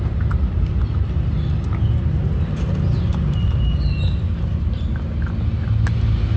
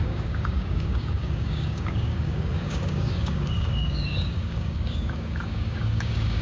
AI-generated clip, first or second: second